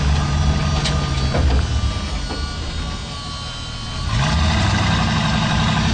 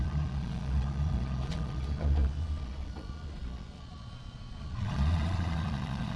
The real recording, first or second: first